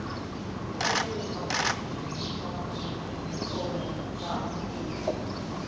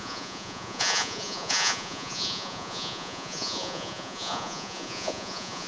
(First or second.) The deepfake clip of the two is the second